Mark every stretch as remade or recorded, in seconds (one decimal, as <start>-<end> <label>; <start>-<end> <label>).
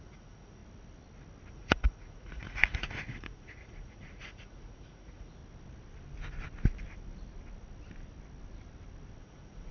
0.0-0.6 remade; 0.6-1.5 recorded; 1.5-5.4 remade; 5.4-9.2 recorded; 9.2-9.7 remade